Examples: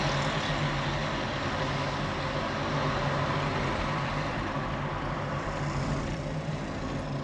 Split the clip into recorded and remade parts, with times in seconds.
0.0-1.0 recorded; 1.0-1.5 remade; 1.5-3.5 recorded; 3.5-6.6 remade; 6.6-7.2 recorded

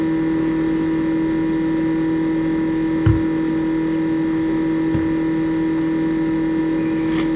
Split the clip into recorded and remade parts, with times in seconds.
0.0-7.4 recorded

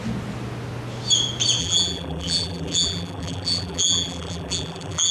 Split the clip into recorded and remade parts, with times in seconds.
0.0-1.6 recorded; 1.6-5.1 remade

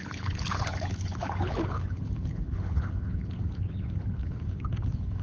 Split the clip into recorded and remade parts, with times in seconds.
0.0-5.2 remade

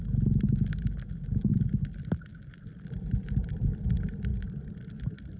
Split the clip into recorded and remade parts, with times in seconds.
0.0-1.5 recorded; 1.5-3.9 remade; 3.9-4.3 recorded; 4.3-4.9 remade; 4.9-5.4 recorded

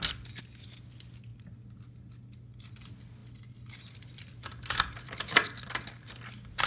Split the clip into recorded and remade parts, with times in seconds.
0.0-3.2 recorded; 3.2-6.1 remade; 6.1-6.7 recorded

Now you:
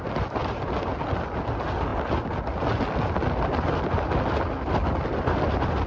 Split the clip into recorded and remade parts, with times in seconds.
0.0-5.9 recorded